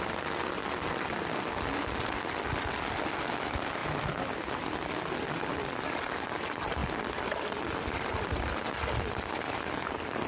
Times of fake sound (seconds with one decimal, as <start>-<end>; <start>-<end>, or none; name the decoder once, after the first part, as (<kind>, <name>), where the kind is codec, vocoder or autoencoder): 6.8-8.4 (vocoder, BigVGAN v2)